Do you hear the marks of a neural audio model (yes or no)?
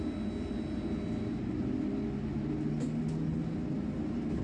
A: no